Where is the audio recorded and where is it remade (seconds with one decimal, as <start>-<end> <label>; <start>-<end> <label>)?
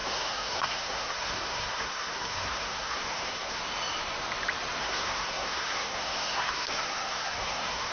0.0-3.6 remade; 3.6-4.8 recorded; 4.8-7.9 remade